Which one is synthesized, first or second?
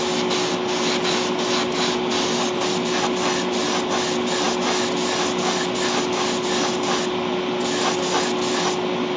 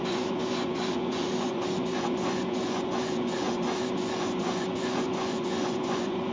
second